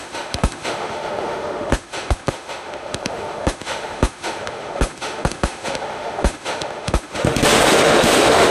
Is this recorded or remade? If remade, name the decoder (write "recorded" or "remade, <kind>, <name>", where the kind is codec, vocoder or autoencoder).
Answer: remade, autoencoder, DAC-VAE